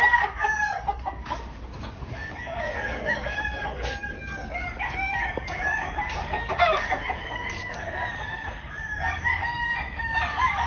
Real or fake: fake